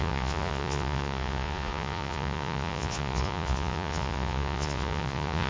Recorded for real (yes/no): no